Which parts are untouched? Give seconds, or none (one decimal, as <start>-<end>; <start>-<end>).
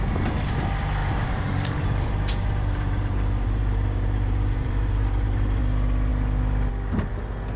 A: 0.0-1.0; 5.6-7.6